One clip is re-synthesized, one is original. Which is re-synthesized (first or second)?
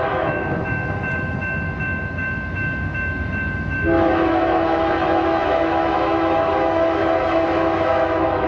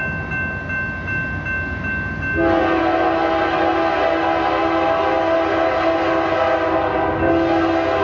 first